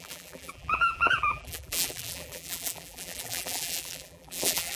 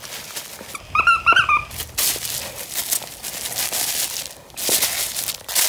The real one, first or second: second